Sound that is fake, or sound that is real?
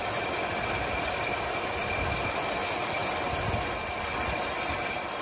real